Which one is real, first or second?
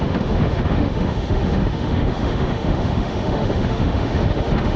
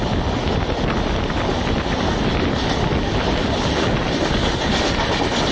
second